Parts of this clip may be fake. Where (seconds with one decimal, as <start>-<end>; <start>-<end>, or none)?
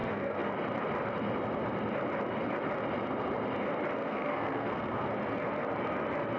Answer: 0.0-0.5; 4.0-5.1